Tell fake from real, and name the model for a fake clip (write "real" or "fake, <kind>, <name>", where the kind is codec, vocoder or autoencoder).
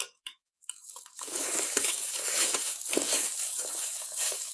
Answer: fake, codec, DAC